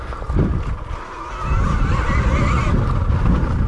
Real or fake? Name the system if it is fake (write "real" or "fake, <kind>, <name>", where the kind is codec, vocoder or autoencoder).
real